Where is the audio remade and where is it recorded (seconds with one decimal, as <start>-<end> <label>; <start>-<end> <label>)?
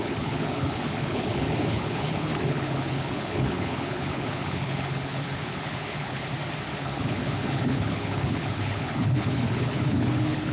0.0-6.3 remade; 6.3-6.8 recorded; 6.8-10.5 remade